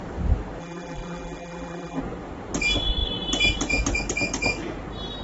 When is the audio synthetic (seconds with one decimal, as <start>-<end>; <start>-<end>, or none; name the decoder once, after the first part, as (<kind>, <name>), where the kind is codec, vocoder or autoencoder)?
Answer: 0.6-2.0 (vocoder, BigVGAN v2)